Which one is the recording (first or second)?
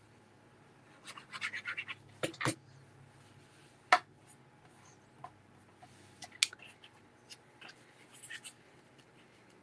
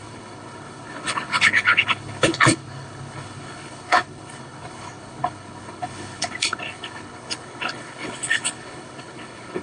first